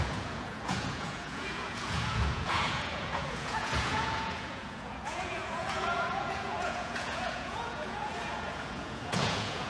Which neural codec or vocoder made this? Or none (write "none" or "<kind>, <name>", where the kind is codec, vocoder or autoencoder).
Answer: vocoder, Vocos